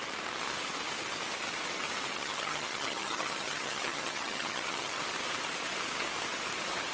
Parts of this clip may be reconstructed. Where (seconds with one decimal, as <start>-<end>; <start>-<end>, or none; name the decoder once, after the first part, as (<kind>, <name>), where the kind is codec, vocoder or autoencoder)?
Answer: 2.1-5.0 (vocoder, HiFi-GAN)